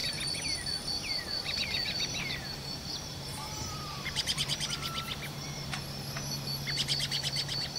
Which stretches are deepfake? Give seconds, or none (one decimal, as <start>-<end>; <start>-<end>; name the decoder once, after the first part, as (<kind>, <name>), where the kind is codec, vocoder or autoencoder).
0.0-4.7 (vocoder, BigVGAN v2)